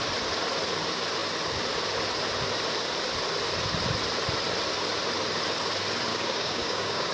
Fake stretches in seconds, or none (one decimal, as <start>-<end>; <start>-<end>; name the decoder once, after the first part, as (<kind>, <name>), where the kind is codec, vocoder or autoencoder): 6.1-7.1 (codec, DAC)